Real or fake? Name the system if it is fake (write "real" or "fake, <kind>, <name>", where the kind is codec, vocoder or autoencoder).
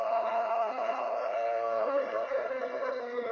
fake, codec, SNAC